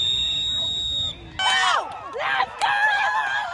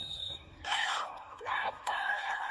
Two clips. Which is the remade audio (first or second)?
second